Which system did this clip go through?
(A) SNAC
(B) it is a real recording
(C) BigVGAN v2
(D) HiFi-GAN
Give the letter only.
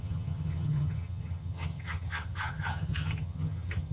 D